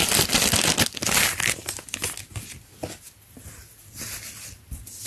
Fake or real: real